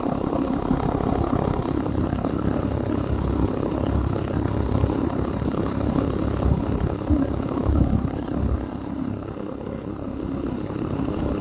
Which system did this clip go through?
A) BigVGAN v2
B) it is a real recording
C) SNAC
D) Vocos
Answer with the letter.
C